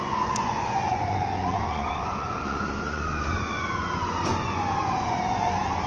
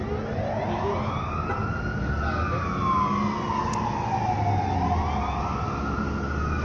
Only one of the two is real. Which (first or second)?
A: second